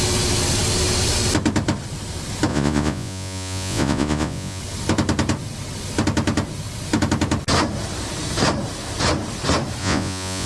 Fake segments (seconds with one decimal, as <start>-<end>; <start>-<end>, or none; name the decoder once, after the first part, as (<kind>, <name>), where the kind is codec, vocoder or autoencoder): 2.5-4.6 (vocoder, Vocos); 9.8-10.5